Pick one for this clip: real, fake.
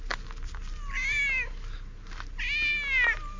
real